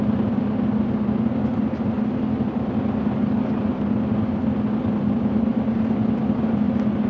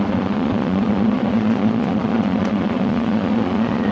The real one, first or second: first